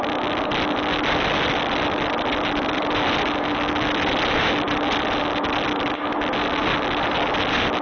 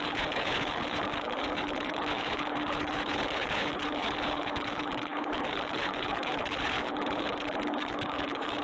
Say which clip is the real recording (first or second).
first